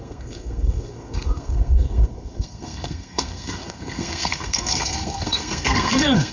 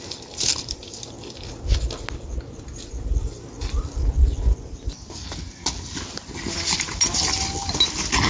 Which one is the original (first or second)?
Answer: second